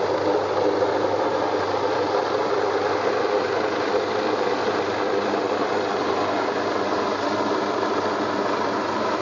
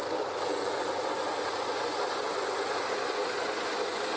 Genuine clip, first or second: first